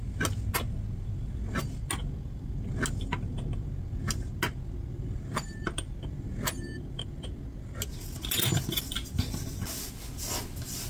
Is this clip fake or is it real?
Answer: real